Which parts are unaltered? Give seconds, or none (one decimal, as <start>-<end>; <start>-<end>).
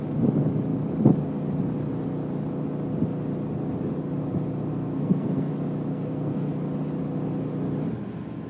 0.0-4.7; 5.5-5.9; 6.5-8.5